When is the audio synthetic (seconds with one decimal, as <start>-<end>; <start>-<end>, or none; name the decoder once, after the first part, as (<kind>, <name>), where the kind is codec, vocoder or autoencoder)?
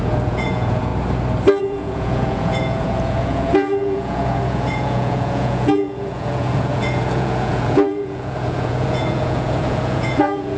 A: 0.0-0.9 (vocoder, Vocos); 1.6-10.6